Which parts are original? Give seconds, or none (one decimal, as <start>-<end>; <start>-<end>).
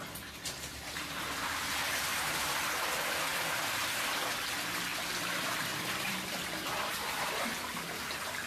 0.0-2.1; 2.7-3.3; 4.2-4.9; 6.9-8.5